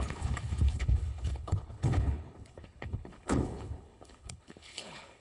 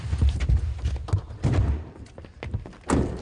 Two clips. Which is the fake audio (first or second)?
first